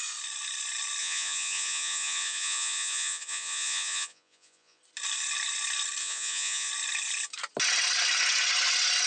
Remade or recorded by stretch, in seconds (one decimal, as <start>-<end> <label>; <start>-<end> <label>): 0.0-1.0 recorded; 1.0-4.8 remade; 4.8-6.0 recorded; 6.0-6.7 remade; 6.7-9.1 recorded